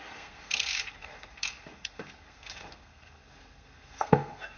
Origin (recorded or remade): remade